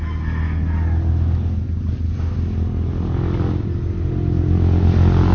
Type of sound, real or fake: real